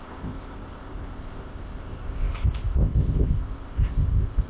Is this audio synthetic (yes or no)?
yes